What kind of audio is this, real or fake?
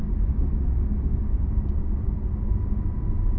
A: real